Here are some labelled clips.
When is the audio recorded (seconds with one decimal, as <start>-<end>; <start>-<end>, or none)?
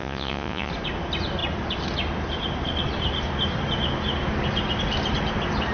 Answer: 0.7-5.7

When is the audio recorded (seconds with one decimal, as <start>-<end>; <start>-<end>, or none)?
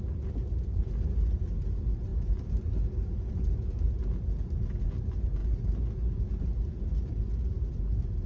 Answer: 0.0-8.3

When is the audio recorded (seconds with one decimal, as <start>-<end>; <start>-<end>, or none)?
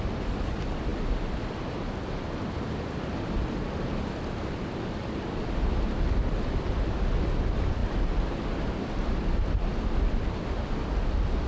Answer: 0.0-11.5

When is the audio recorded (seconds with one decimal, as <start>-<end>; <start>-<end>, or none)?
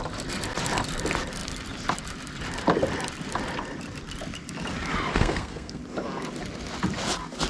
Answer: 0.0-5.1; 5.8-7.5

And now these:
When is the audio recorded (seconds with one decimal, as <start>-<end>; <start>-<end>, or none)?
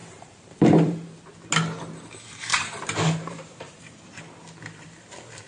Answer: 1.2-2.5; 4.1-5.5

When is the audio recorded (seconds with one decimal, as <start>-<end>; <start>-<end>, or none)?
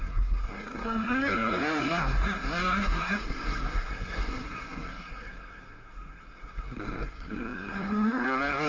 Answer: none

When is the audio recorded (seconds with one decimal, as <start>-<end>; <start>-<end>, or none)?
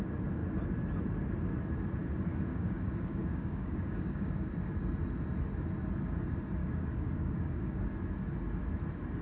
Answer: 0.0-2.5; 4.4-6.6; 7.8-9.2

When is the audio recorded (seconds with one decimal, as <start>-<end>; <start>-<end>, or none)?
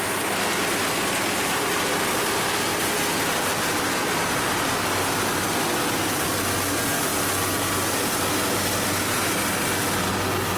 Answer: 0.0-2.7; 6.3-10.6